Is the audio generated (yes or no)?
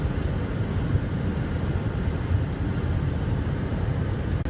no